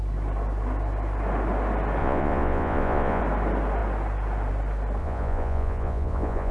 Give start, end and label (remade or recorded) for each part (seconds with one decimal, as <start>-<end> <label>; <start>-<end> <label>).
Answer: 0.0-2.0 recorded; 2.0-3.2 remade; 3.2-5.0 recorded; 5.0-6.5 remade